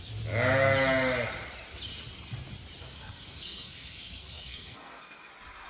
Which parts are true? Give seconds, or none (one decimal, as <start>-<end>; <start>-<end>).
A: 0.0-2.8; 5.3-5.7